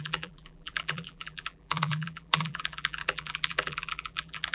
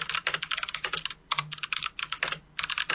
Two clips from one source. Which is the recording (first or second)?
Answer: second